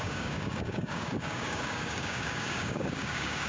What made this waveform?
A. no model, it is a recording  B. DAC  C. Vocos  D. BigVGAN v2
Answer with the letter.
B